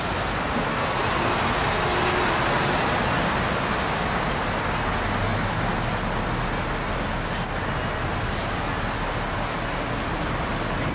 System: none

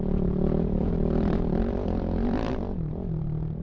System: vocoder, BigVGAN v2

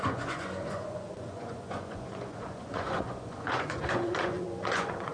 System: vocoder, Vocos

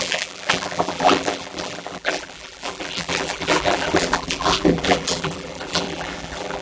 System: vocoder, BigVGAN v2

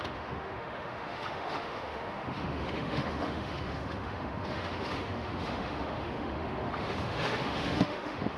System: autoencoder, DAC-VAE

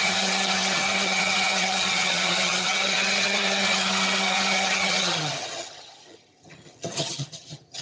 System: vocoder, HiFi-GAN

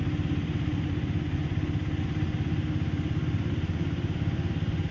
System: none